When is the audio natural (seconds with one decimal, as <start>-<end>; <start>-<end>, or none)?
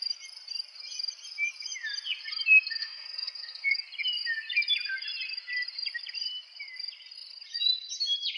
0.0-2.8; 3.7-8.4